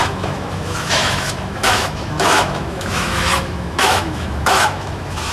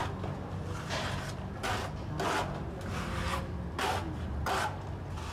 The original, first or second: second